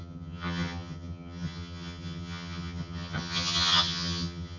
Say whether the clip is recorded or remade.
remade